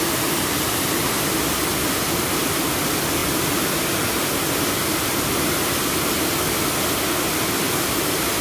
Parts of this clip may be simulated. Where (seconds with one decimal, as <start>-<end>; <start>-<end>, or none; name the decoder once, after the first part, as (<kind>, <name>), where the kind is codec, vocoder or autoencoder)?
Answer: none